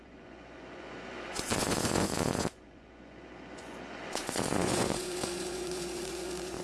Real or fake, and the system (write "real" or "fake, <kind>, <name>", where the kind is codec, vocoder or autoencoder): fake, vocoder, Vocos